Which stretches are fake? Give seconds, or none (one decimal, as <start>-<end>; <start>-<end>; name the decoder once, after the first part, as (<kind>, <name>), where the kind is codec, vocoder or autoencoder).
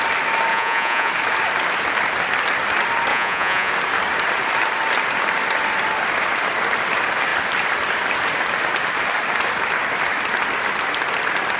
0.5-1.1 (vocoder, Vocos); 3.1-3.7